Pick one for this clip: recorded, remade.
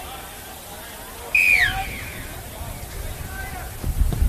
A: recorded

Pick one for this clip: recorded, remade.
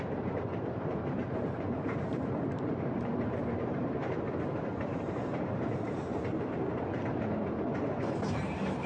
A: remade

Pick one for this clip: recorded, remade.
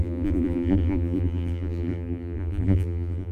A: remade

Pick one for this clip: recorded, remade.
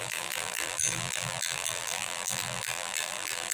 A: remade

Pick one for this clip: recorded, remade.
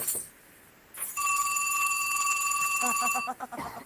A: recorded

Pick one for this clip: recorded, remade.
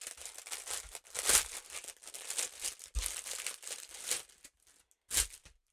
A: recorded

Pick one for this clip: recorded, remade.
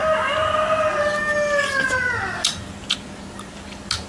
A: recorded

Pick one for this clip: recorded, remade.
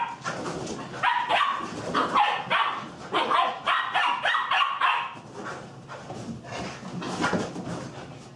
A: recorded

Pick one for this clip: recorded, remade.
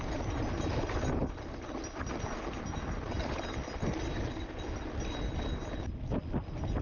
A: recorded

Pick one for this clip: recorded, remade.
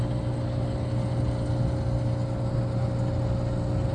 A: recorded